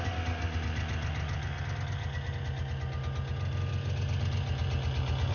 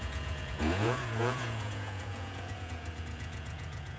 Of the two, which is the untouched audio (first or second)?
first